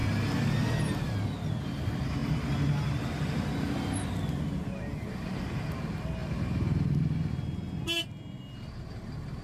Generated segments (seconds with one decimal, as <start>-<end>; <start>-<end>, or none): none